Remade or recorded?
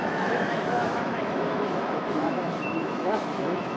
remade